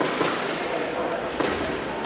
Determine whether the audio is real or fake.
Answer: real